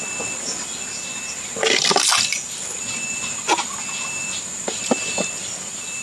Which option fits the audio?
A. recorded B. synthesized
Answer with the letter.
A